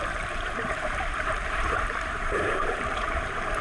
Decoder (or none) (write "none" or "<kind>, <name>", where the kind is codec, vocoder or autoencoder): vocoder, BigVGAN v2